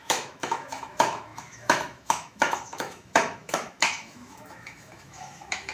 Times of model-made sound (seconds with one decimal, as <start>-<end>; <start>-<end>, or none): 0.0-5.7